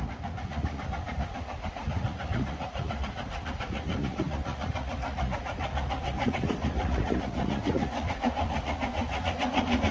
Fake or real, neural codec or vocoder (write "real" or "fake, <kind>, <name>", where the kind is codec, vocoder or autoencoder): fake, vocoder, Vocos